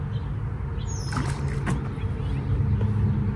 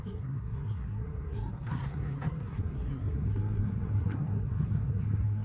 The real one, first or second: first